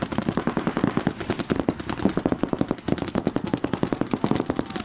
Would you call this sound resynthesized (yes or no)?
no